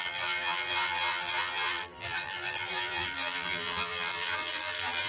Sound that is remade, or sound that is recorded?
remade